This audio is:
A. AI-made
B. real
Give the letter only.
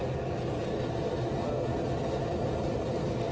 B